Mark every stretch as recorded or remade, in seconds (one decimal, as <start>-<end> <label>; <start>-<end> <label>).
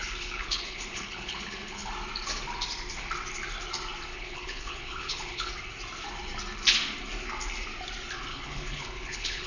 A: 0.0-1.9 remade; 1.9-4.1 recorded; 4.1-5.5 remade; 5.5-8.3 recorded; 8.3-9.5 remade